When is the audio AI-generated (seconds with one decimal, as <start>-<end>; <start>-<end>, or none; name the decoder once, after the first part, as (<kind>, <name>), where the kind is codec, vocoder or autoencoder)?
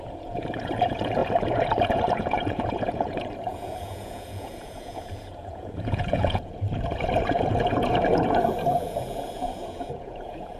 0.0-10.6 (vocoder, Vocos)